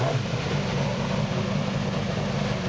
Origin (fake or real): real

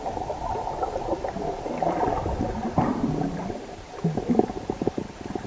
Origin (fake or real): real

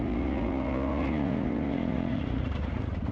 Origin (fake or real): fake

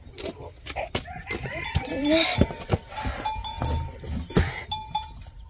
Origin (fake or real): real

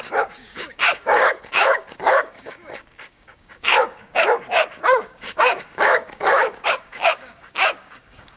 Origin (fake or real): fake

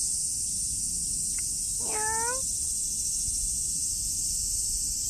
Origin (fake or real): real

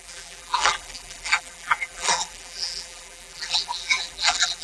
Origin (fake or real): fake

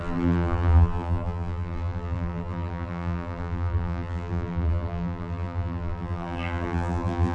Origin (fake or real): fake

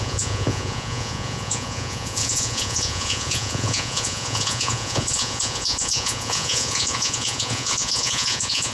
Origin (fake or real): fake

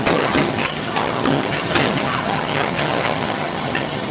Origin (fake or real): fake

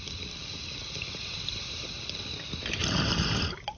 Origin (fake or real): real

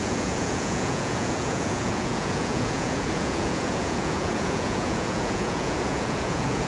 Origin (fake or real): fake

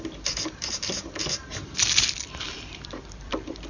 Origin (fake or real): fake